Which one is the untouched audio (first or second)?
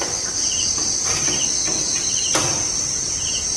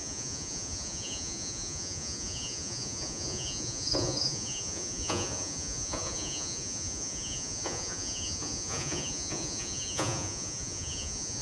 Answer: first